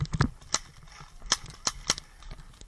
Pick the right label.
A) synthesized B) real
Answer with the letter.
A